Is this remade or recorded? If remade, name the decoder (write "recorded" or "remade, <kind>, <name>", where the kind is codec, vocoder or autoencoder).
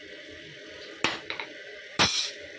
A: recorded